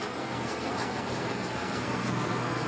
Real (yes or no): no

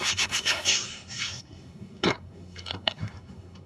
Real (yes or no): no